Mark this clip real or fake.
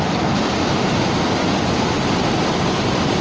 real